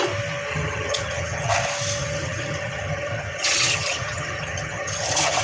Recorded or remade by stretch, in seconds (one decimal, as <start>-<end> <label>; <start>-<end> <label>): 0.0-0.5 recorded; 0.5-1.5 remade; 1.5-2.0 recorded; 2.0-5.4 remade